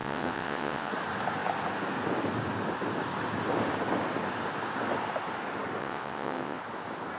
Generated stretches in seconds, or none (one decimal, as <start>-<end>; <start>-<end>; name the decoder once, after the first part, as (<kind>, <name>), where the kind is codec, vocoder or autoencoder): 0.0-0.9 (vocoder, WaveNeXt); 5.8-6.6